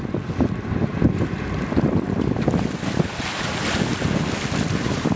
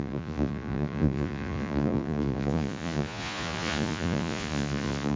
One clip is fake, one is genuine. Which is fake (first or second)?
second